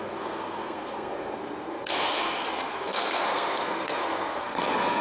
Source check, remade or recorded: remade